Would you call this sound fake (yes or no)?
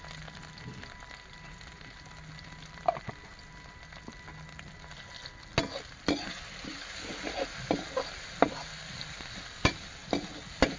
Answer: no